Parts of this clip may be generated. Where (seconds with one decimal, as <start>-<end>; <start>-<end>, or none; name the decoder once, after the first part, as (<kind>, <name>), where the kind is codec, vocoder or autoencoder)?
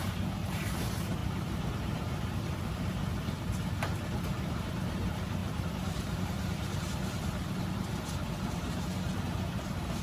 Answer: 0.0-10.0 (vocoder, BigVGAN v2)